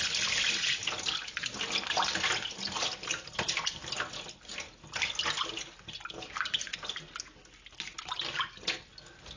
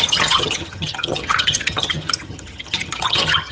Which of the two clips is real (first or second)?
first